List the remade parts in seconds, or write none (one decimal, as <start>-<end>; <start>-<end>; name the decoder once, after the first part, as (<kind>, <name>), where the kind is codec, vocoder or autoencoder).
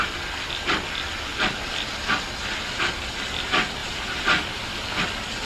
none